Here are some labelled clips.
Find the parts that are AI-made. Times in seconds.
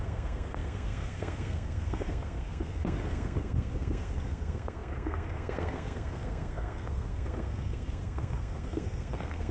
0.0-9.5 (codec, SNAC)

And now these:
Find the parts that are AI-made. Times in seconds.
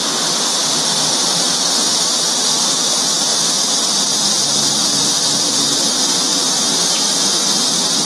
none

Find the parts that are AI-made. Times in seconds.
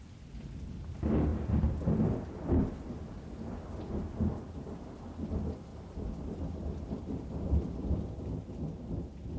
5.7-8.9 (vocoder, BigVGAN v2)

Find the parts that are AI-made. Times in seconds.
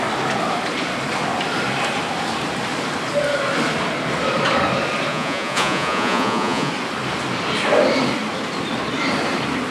5.1-6.7 (vocoder, Vocos)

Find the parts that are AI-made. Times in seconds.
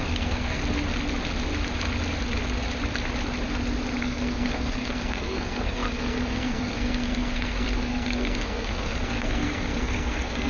0.0-0.6 (codec, SNAC); 4.0-10.5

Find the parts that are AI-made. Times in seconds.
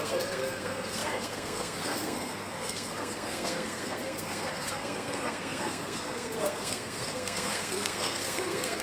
0.0-8.8 (codec, SNAC)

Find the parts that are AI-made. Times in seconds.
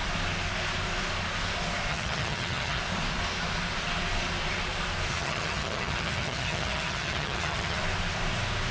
1.9-2.8 (vocoder, HiFi-GAN); 5.1-7.8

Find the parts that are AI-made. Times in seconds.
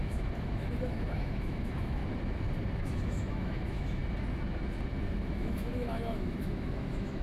0.0-2.0 (autoencoder, DAC-VAE); 2.8-4.0; 5.3-7.2